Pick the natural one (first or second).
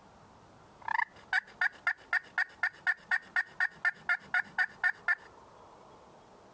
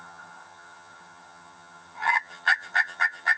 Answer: first